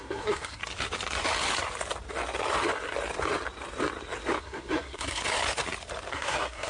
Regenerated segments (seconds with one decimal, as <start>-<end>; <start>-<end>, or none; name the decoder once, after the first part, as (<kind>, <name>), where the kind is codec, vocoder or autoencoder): 0.0-0.6 (codec, SNAC); 4.4-5.2; 6.1-6.7

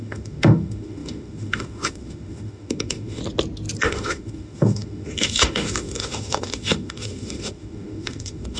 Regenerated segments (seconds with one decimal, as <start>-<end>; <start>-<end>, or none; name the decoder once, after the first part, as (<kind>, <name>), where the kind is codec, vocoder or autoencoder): 0.0-3.2 (autoencoder, DAC-VAE); 3.8-8.6

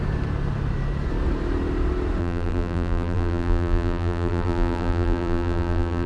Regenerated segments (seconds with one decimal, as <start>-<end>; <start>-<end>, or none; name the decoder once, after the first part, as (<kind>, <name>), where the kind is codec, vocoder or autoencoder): 2.2-6.1 (vocoder, BigVGAN v2)

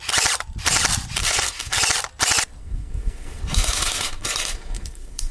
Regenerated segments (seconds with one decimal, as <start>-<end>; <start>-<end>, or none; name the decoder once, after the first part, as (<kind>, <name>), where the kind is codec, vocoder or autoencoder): 1.2-1.8 (codec, SNAC); 2.6-5.3